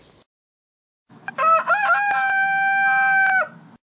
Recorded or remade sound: recorded